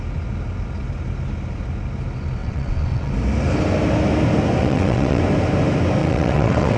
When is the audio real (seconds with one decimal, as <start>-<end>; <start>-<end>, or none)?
0.0-2.4; 3.1-4.6; 5.2-6.0